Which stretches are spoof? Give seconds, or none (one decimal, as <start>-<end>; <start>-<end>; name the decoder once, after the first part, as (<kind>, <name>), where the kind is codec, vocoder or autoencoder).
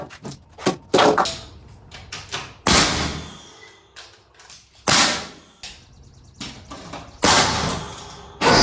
none